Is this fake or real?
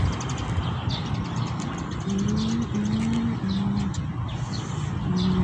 real